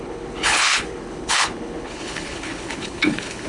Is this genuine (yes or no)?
no